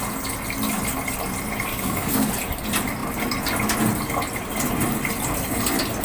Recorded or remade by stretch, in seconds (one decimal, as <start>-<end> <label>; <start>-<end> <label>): 0.0-1.7 recorded; 1.7-2.3 remade; 2.3-6.0 recorded